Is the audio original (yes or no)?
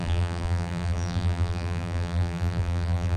no